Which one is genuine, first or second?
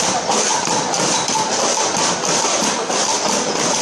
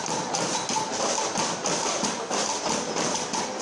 second